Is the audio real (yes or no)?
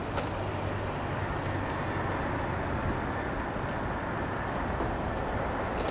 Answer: yes